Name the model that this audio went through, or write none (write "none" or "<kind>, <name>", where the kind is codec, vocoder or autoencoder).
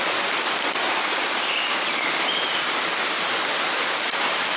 none